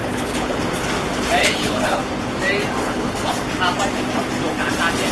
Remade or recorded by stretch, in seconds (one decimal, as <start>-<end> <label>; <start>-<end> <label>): 0.0-0.6 remade; 0.6-1.4 recorded; 1.4-2.0 remade; 2.0-2.8 recorded; 2.8-3.3 remade; 3.3-5.1 recorded